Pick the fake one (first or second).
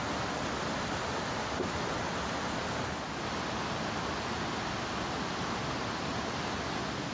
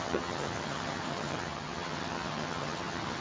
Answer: second